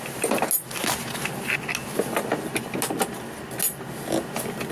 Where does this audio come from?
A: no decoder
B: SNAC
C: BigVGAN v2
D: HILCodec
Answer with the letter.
A